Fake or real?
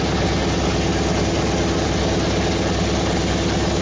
real